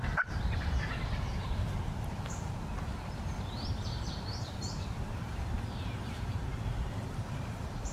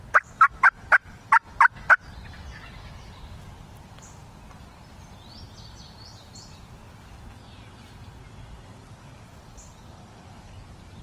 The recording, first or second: second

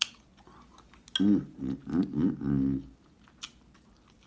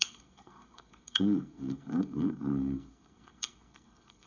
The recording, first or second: first